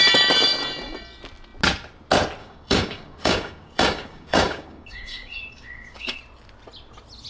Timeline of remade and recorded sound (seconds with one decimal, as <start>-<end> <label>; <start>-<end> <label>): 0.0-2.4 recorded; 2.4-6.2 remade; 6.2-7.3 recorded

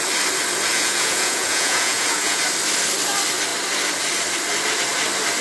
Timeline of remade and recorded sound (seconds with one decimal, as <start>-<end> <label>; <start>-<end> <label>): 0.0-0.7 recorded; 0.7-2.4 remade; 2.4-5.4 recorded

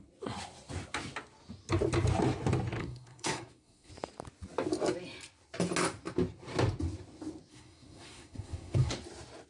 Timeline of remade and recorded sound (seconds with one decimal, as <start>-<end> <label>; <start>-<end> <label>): 0.0-2.8 recorded; 2.8-3.9 remade; 3.9-7.5 recorded; 7.5-8.9 remade; 8.9-9.5 recorded

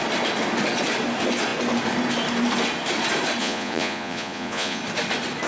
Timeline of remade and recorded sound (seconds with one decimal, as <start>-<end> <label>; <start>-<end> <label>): 0.0-3.4 recorded; 3.4-4.8 remade; 4.8-5.5 recorded

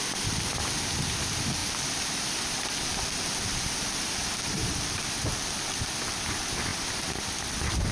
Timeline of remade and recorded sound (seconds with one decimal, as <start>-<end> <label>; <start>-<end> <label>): 0.0-6.7 remade; 6.7-7.5 recorded; 7.5-7.9 remade